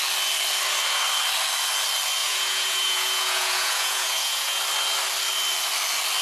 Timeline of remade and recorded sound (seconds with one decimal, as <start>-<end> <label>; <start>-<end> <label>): 0.0-2.2 recorded; 2.2-4.6 remade; 4.6-6.2 recorded

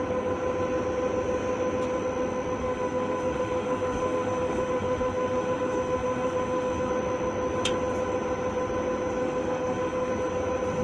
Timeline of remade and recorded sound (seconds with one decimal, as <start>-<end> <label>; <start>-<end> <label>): 0.0-2.6 recorded; 2.6-6.9 remade; 6.9-9.2 recorded; 9.2-10.1 remade; 10.1-10.8 recorded

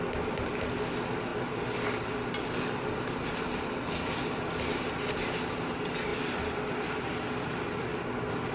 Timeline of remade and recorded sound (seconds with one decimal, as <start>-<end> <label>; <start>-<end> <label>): 0.0-8.5 recorded